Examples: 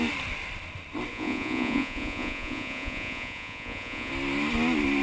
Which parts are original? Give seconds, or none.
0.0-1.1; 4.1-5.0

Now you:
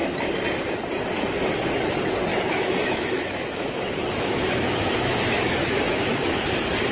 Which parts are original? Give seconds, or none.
0.0-2.3; 6.4-6.9

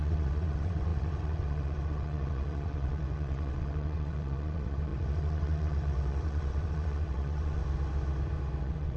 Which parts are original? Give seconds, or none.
7.6-8.6

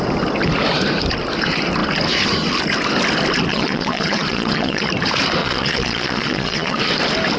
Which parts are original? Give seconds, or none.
0.0-3.5; 4.9-5.4; 6.8-7.4

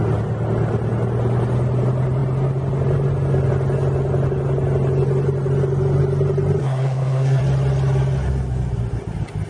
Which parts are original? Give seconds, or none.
0.0-6.6; 7.4-9.5

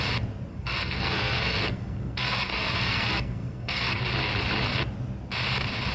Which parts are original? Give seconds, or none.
0.0-0.5; 4.0-5.9

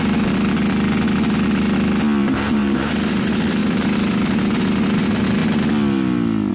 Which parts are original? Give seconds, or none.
0.0-2.2; 2.9-3.6; 4.6-6.5